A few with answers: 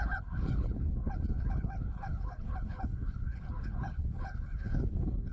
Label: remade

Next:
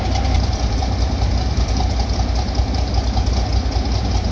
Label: recorded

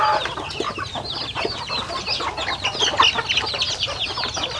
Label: recorded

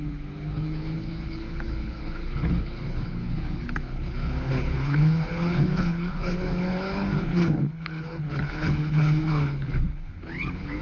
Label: remade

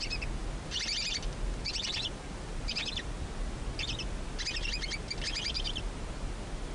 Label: recorded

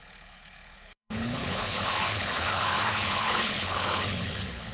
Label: remade